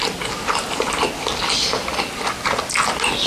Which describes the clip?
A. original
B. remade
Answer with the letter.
A